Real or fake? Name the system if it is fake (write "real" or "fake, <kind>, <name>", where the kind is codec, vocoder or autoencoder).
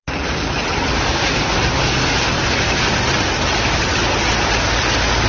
real